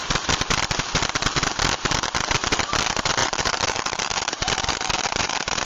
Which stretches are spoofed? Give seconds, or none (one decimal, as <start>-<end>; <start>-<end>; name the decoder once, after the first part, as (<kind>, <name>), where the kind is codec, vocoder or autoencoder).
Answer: 3.2-5.6 (vocoder, BigVGAN v2)